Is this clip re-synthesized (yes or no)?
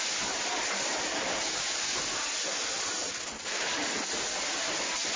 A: no